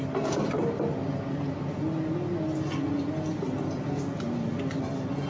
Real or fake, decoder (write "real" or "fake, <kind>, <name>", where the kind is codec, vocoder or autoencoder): real